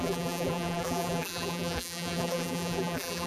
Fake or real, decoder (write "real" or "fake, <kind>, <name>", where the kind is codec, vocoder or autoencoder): fake, vocoder, BigVGAN v2